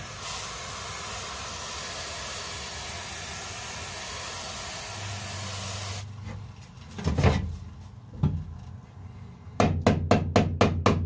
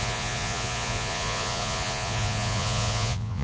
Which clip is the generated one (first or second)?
second